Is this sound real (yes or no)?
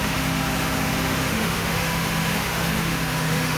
no